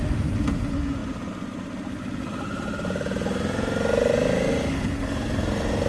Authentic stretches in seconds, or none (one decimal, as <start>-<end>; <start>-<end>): 0.0-5.9